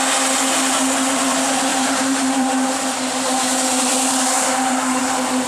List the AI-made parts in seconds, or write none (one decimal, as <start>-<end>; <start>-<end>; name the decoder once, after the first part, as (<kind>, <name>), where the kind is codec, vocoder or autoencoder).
1.7-5.0 (vocoder, BigVGAN v2)